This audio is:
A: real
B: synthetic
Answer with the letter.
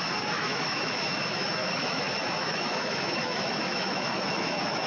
B